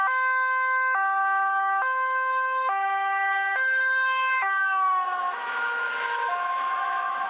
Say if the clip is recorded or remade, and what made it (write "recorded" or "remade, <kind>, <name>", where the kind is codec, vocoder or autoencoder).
remade, autoencoder, DAC-VAE